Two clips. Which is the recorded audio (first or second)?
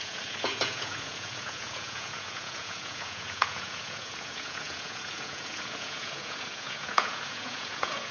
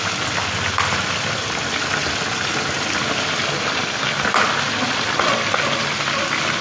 second